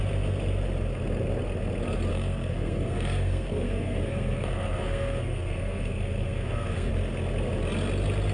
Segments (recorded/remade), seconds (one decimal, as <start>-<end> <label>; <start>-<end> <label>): 0.0-2.1 recorded; 2.1-6.9 remade; 6.9-8.3 recorded